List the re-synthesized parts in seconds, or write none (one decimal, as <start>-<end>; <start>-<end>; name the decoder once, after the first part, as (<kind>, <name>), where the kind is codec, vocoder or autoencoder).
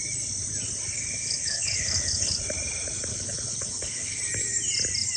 1.2-2.4 (codec, HILCodec); 3.1-4.2